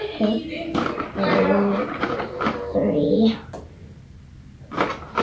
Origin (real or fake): real